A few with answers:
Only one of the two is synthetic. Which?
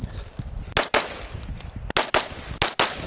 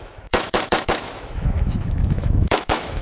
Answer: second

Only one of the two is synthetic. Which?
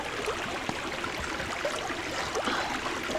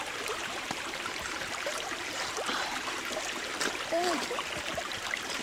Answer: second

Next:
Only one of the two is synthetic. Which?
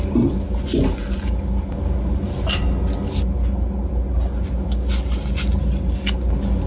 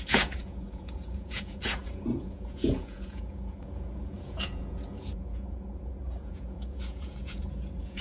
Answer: second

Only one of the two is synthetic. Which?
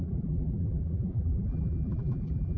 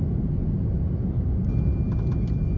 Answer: first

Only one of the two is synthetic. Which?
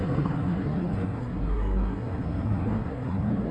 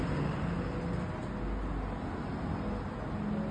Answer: first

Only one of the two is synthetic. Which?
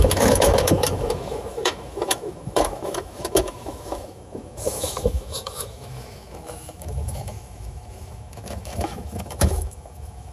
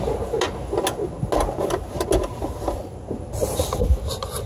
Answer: first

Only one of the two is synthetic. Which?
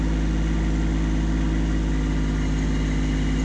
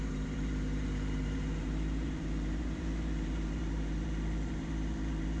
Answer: second